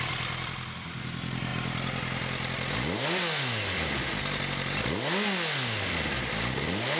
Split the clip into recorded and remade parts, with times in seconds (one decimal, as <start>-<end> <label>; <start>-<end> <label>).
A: 0.0-7.0 recorded